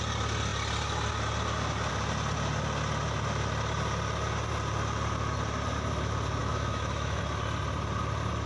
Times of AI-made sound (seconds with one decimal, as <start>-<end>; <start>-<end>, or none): 6.4-7.2

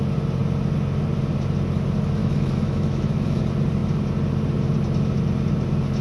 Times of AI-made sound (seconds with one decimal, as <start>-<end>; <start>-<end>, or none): 2.2-3.4